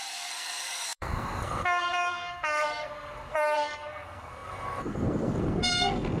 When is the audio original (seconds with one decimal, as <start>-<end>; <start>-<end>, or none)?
none